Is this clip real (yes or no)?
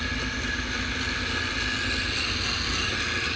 yes